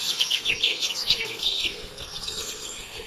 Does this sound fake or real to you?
fake